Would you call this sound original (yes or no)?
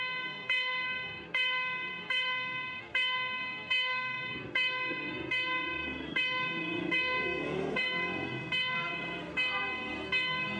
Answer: no